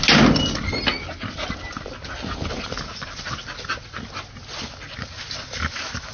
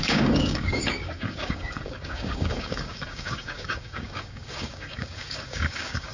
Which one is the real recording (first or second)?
first